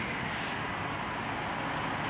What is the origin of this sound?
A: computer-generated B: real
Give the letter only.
B